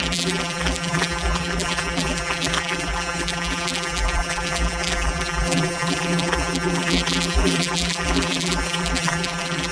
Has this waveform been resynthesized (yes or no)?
yes